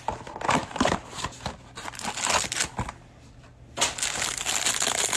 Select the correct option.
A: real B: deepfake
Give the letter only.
A